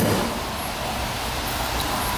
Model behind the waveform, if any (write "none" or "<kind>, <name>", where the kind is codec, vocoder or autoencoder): none